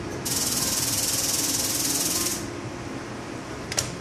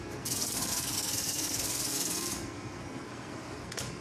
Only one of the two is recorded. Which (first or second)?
first